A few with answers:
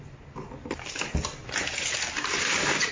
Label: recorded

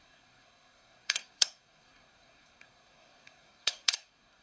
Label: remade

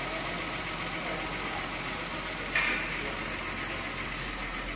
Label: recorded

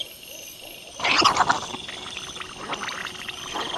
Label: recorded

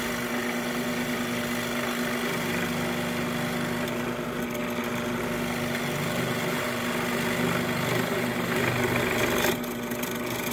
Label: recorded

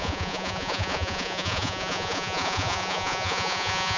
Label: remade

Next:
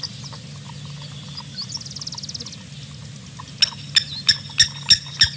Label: recorded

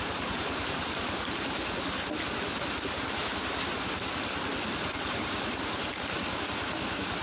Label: recorded